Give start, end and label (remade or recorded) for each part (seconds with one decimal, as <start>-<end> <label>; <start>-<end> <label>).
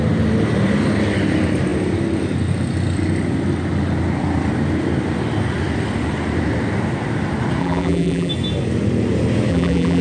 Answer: 0.0-7.6 recorded; 7.6-8.3 remade; 8.3-9.5 recorded; 9.5-10.0 remade